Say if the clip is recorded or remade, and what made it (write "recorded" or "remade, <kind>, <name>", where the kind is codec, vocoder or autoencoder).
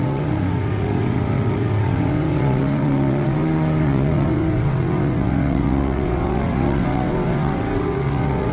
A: remade, vocoder, WaveNeXt